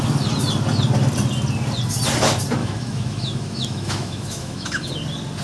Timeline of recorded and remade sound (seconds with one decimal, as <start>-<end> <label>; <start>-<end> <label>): 0.0-2.6 recorded; 2.6-4.9 remade; 4.9-5.4 recorded